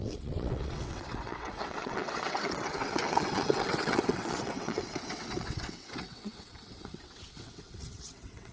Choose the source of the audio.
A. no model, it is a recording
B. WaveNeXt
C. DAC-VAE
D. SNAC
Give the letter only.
B